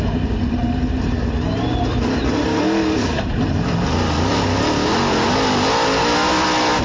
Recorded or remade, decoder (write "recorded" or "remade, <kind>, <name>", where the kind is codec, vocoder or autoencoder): recorded